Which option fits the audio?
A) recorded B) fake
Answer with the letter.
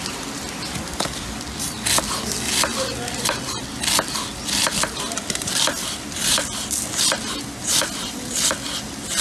A